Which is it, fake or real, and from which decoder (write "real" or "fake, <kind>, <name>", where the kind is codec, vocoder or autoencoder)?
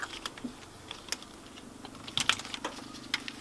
real